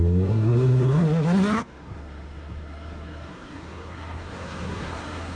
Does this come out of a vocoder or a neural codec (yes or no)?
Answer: yes